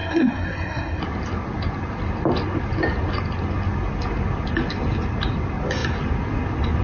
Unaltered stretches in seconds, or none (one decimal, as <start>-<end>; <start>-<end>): 1.0-6.8